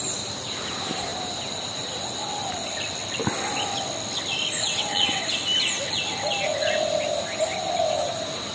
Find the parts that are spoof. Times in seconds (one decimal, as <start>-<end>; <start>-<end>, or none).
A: 4.6-5.3